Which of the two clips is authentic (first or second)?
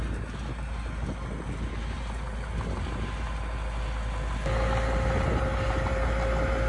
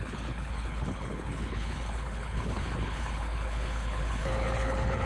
first